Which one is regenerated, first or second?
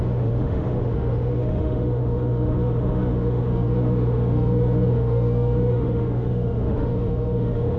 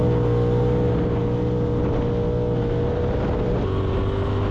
first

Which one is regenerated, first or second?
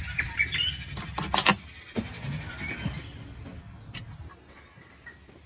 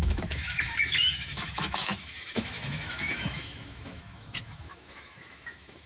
second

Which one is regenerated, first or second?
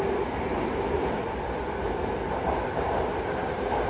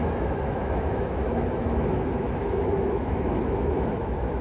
second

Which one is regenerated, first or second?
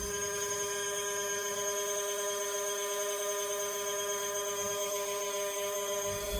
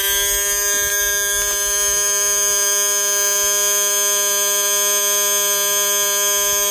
first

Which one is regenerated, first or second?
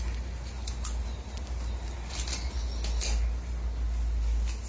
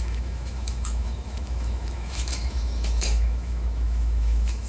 second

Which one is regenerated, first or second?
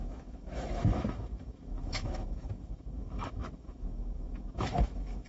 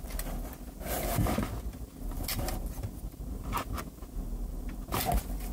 first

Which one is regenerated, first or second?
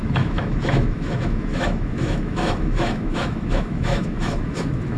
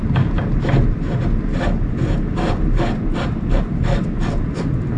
first